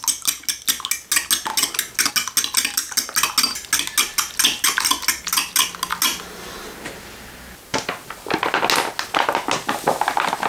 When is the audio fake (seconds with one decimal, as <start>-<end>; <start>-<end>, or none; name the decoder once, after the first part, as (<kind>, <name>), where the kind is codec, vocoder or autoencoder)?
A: none